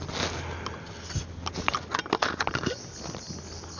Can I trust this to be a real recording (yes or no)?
yes